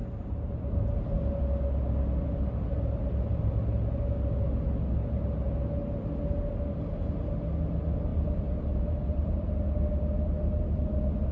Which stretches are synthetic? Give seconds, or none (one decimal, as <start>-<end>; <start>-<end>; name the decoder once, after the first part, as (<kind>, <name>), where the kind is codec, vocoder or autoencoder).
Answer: 8.1-9.5 (vocoder, BigVGAN v2)

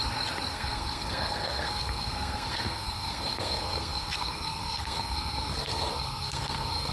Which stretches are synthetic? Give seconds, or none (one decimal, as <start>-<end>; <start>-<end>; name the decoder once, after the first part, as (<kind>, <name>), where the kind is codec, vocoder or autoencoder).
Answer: 0.5-6.9 (codec, SNAC)

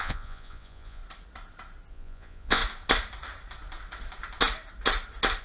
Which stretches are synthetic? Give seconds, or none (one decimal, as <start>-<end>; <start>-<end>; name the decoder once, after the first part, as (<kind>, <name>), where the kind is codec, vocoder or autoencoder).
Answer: 0.0-1.0 (vocoder, Vocos); 1.9-2.6

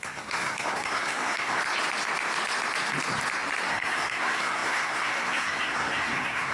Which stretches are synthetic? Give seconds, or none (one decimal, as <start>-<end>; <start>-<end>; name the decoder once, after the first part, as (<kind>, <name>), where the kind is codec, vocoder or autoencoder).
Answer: 0.0-1.6 (codec, SNAC); 3.7-6.5